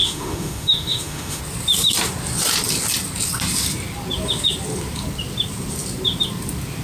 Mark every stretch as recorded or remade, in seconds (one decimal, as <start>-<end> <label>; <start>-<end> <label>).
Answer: 0.0-1.4 remade; 1.4-6.8 recorded